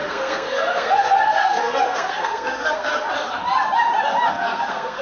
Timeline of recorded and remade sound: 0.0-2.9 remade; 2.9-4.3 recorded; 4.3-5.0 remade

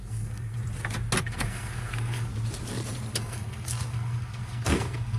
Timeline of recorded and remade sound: 0.0-0.6 remade; 0.6-1.2 recorded; 1.2-2.3 remade; 2.3-3.2 recorded; 3.2-5.2 remade

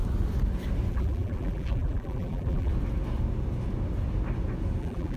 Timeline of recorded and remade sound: 0.0-0.9 recorded; 0.9-2.7 remade; 2.7-4.8 recorded; 4.8-5.2 remade

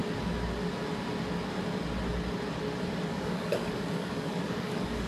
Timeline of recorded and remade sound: 0.0-3.1 recorded; 3.1-5.1 remade

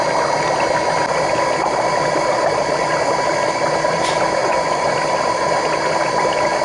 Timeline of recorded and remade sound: 0.0-4.4 recorded; 4.4-4.9 remade; 4.9-6.6 recorded

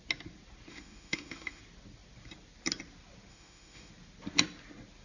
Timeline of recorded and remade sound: 0.0-0.7 recorded; 0.7-1.6 remade; 1.6-3.3 recorded; 3.3-3.9 remade; 3.9-5.0 recorded